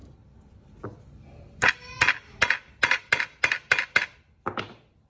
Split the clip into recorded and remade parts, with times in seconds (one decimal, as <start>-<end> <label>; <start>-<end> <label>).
0.0-5.1 recorded